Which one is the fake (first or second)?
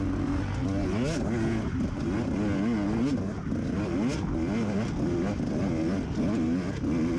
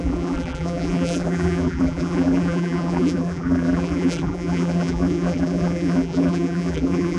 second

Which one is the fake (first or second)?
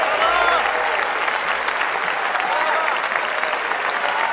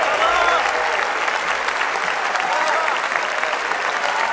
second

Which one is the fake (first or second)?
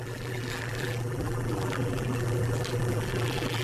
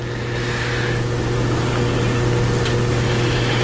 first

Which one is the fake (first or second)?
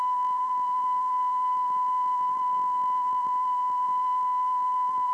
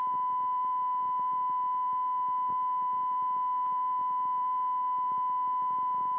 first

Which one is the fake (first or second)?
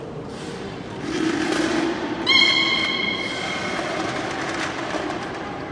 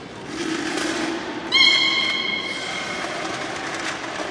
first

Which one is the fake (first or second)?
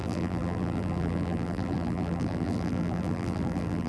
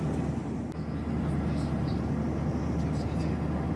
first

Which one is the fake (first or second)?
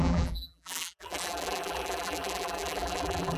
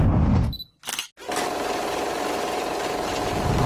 first